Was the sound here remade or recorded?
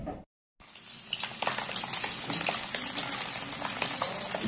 recorded